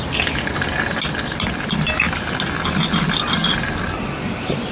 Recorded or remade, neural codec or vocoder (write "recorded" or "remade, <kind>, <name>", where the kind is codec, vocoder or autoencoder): recorded